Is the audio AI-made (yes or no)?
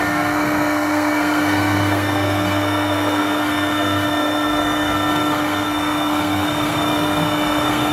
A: yes